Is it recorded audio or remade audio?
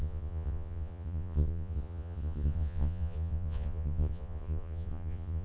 remade